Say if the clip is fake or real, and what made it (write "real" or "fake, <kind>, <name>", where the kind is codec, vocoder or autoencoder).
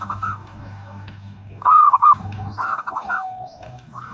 fake, codec, DAC